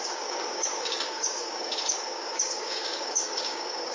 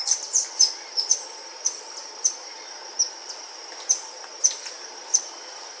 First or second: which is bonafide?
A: second